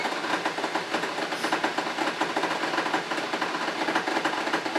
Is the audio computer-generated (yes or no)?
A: no